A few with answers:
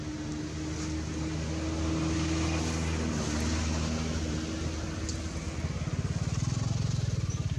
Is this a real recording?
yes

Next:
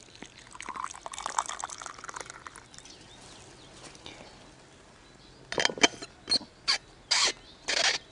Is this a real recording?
yes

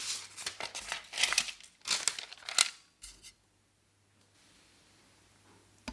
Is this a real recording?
yes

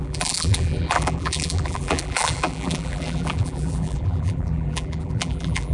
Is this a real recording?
no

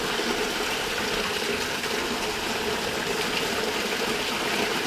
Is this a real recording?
yes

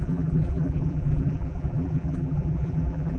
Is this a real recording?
no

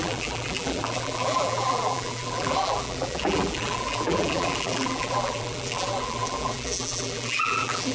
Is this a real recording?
no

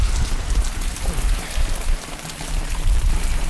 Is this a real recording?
no